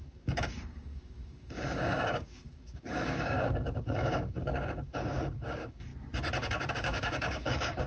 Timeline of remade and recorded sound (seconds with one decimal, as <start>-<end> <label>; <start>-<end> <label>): 0.0-5.9 remade; 5.9-6.7 recorded; 6.7-7.9 remade